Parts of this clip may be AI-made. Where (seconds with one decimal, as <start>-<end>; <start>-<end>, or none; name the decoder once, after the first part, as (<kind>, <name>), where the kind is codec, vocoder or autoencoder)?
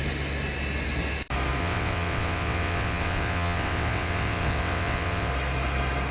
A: 1.6-5.3 (vocoder, WaveNeXt)